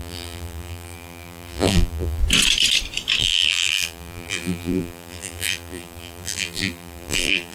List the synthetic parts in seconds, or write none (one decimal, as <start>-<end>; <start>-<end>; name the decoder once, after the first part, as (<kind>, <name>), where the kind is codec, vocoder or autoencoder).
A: 0.0-2.2 (vocoder, BigVGAN v2); 3.2-7.5